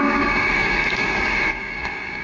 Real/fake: fake